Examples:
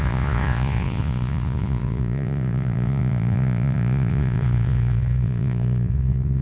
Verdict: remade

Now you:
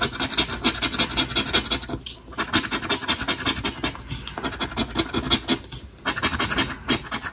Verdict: recorded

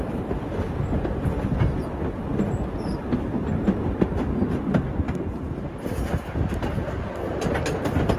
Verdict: recorded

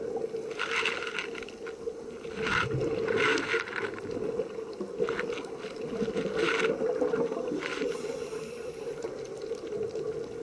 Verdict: recorded